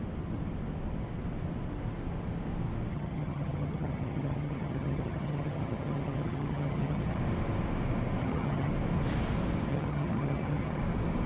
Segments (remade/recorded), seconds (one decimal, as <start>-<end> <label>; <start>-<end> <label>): 0.0-2.9 recorded; 2.9-7.2 remade; 7.2-8.2 recorded; 8.2-8.7 remade; 8.7-9.7 recorded; 9.7-10.8 remade; 10.8-11.3 recorded